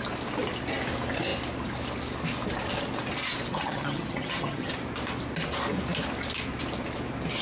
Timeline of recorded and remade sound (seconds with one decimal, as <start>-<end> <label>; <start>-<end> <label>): 0.0-3.5 recorded; 3.5-4.7 remade; 4.7-7.4 recorded